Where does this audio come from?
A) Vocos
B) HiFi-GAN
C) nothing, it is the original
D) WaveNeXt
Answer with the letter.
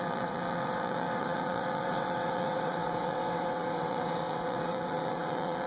D